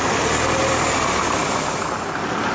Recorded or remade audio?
recorded